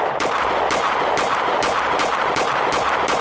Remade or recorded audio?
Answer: recorded